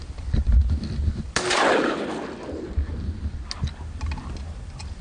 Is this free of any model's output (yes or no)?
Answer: yes